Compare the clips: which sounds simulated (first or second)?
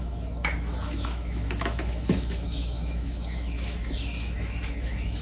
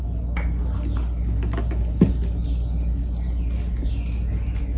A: first